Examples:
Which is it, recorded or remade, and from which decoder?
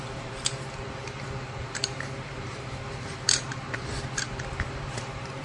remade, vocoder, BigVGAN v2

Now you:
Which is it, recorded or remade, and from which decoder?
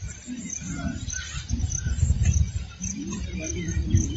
remade, vocoder, BigVGAN v2